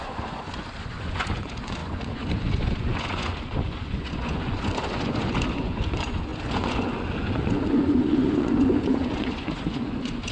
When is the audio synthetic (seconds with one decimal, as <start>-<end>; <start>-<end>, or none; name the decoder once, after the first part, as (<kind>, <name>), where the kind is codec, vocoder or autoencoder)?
0.0-10.3 (vocoder, Vocos)

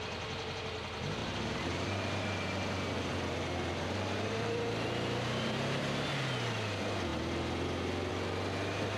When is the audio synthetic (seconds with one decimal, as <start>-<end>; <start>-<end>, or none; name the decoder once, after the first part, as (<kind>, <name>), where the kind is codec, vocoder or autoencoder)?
1.2-5.8 (vocoder, BigVGAN v2)

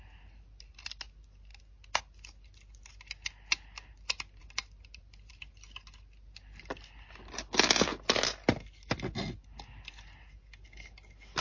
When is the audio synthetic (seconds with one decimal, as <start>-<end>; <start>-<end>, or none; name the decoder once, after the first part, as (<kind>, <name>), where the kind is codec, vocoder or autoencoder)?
none

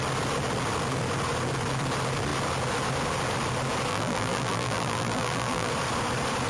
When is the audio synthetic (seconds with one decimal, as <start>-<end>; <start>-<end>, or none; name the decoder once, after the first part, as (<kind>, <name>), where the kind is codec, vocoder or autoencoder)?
3.9-5.7 (vocoder, BigVGAN v2)

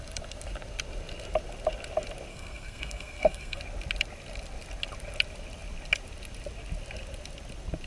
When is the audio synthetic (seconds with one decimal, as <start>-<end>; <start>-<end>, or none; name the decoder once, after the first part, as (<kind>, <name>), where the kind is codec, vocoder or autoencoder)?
2.3-3.6 (codec, SNAC)

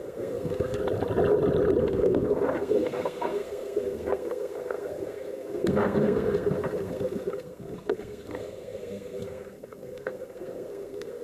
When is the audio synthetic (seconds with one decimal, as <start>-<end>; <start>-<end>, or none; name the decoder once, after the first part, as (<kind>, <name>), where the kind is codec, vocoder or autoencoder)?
0.0-0.8 (codec, SNAC); 1.8-11.2